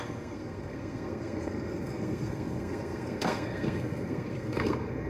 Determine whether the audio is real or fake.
fake